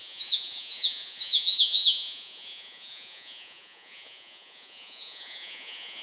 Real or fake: fake